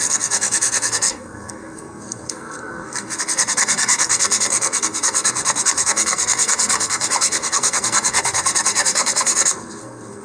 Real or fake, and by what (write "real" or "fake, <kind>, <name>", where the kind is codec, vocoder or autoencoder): fake, codec, SNAC